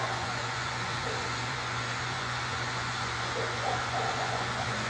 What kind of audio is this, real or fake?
fake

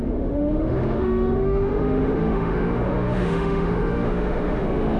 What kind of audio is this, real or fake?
fake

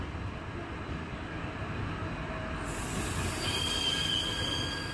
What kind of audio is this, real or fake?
real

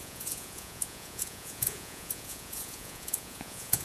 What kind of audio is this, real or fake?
fake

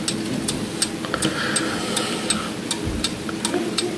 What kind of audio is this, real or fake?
real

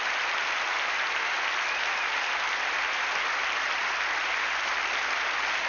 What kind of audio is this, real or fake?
real